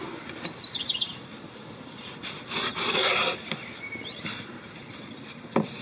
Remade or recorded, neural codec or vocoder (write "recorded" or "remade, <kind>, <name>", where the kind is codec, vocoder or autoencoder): remade, vocoder, BigVGAN v2